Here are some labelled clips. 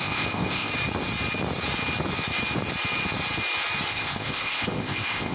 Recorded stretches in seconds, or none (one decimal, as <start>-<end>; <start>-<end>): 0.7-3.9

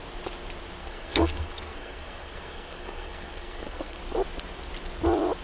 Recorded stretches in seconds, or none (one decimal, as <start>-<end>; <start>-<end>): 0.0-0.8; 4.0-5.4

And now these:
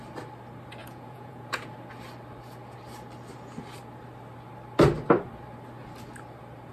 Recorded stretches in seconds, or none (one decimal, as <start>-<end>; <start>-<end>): 0.0-0.8; 1.7-6.7